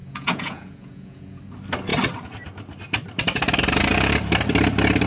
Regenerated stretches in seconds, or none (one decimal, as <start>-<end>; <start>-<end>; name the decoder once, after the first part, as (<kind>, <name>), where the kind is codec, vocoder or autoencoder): 0.0-1.4 (vocoder, Vocos)